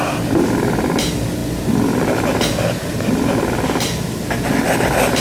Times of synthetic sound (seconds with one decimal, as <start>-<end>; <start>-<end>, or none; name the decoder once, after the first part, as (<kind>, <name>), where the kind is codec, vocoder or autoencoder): none